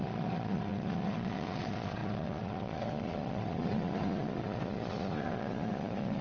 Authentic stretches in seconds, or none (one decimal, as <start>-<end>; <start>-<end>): none